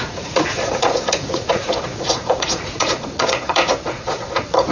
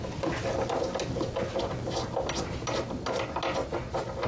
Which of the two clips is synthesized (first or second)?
first